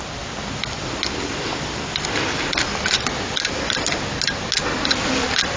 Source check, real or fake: real